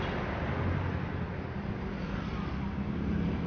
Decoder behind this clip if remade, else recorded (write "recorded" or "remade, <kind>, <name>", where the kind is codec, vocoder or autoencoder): recorded